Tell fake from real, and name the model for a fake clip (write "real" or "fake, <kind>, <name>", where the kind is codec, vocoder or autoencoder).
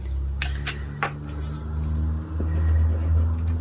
real